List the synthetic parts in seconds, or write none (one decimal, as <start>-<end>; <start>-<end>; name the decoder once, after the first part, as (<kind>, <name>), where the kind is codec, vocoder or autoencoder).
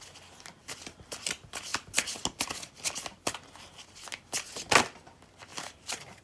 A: 5.5-6.2 (vocoder, BigVGAN v2)